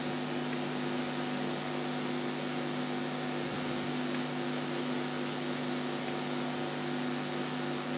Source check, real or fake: real